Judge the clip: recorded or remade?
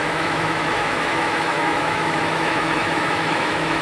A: remade